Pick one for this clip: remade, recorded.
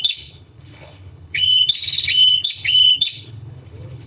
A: remade